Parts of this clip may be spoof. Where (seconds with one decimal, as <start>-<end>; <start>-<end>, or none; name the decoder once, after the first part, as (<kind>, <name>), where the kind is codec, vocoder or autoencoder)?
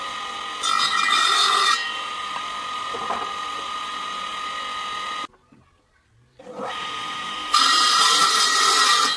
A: 1.8-2.4 (vocoder, BigVGAN v2); 6.8-8.3